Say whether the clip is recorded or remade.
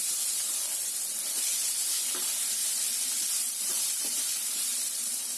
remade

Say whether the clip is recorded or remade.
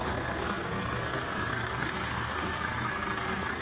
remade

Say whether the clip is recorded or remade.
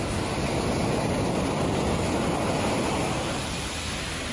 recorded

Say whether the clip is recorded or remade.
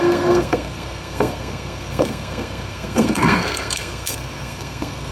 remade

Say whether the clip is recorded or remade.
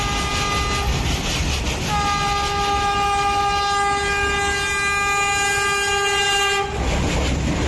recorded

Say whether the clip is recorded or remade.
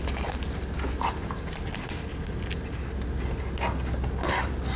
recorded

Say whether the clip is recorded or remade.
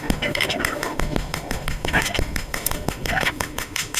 remade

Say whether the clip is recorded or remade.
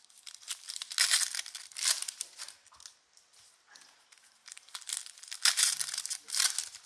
recorded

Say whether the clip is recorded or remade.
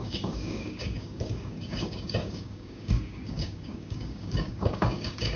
remade